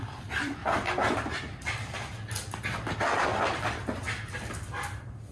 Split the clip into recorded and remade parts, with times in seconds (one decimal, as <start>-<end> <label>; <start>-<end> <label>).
0.0-0.6 remade; 0.6-3.4 recorded; 3.4-5.3 remade